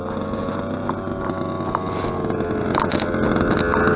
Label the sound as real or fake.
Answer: real